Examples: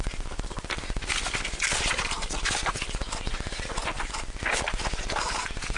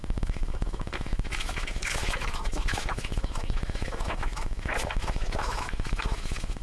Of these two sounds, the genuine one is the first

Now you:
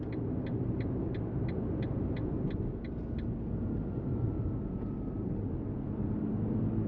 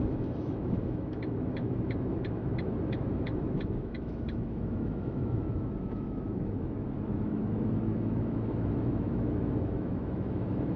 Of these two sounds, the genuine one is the first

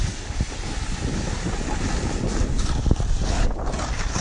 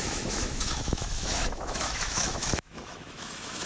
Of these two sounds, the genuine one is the first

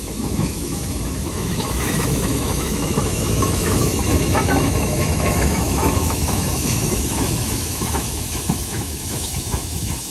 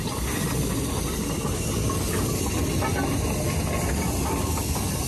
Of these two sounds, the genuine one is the second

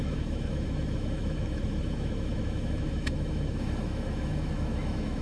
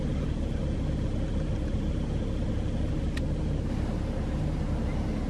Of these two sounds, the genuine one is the second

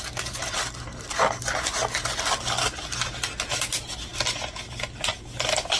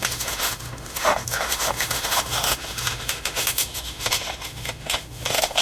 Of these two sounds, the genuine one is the first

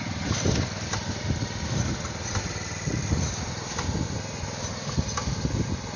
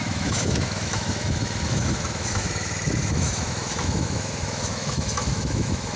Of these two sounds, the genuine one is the first